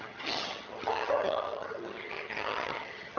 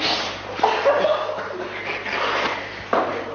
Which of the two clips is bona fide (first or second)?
second